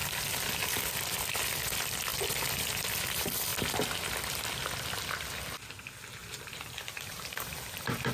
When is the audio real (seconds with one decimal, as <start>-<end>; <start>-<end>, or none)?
0.0-6.2